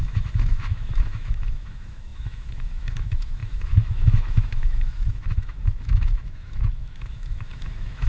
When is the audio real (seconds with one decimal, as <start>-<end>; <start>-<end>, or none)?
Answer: none